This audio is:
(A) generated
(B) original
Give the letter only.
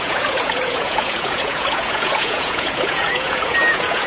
A